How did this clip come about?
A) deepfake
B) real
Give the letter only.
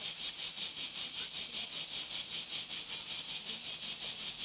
B